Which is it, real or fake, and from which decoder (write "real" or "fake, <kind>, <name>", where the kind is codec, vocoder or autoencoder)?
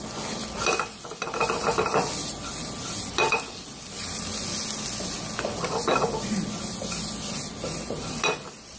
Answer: real